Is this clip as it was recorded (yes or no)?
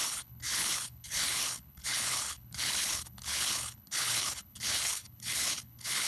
no